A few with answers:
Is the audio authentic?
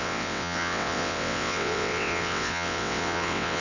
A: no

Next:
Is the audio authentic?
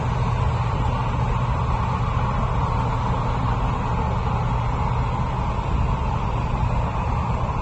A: yes